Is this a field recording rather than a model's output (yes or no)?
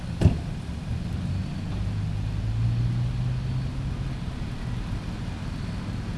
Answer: yes